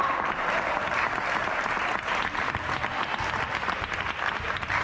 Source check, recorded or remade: recorded